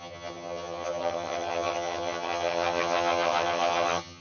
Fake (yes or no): yes